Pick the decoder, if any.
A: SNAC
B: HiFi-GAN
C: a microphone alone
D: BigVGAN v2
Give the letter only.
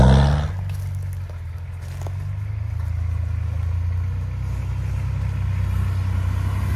C